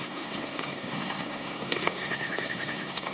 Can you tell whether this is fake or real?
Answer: fake